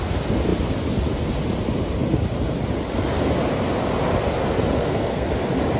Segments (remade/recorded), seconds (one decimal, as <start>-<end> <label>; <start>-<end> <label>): 0.0-4.8 recorded; 4.8-5.3 remade; 5.3-5.8 recorded